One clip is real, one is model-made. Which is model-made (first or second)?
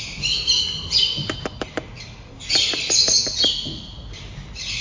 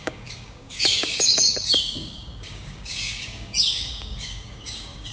second